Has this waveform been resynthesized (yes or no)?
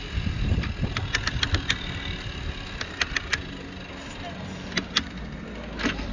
no